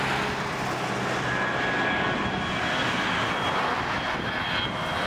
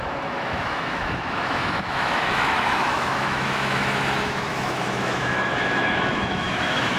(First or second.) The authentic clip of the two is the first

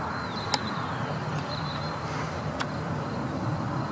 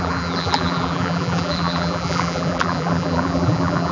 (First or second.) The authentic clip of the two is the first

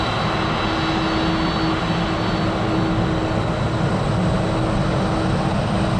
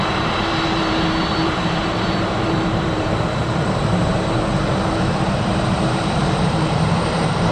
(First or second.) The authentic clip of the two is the first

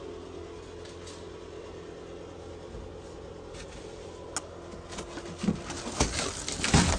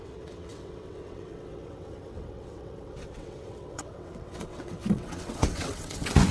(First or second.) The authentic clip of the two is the first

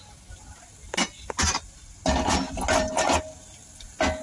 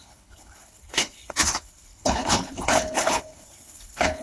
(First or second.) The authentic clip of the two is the first